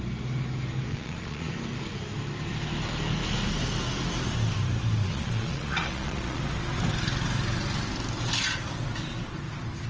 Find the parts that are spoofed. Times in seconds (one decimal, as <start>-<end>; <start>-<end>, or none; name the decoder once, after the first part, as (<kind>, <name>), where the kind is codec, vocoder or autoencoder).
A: 0.9-1.5 (vocoder, Vocos); 5.0-6.4